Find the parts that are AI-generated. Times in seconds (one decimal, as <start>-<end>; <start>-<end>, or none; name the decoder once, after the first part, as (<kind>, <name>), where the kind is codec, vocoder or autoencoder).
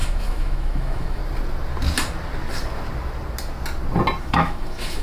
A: 0.0-1.2 (autoencoder, DAC-VAE); 4.2-5.0